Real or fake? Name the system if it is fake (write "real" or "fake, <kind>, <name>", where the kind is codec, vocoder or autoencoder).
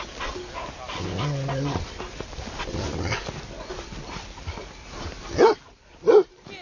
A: real